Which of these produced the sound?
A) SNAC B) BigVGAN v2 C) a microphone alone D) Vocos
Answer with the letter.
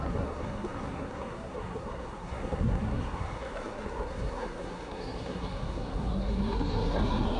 A